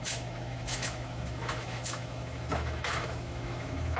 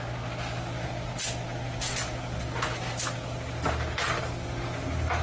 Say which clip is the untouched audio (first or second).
second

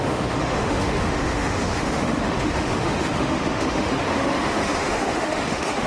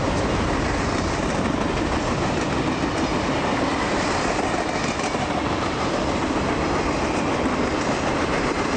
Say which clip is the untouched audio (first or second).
second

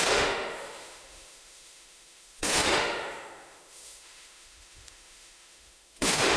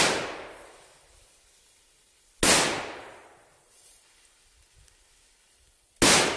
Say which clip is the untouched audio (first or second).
second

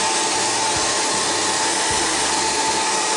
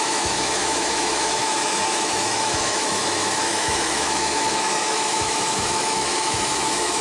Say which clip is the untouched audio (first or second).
first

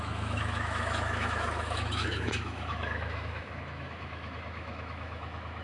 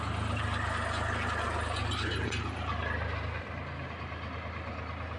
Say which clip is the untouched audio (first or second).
second